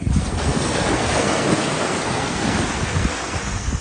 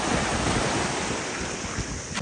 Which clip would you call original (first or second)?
second